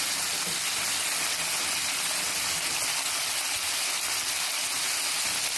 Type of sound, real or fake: real